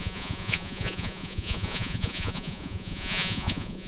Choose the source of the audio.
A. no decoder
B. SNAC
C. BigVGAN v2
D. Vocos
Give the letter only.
D